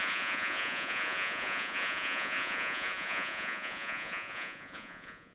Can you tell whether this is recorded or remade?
remade